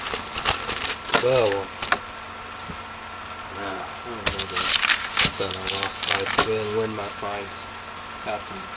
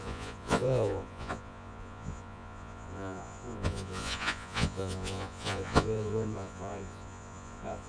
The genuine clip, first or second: first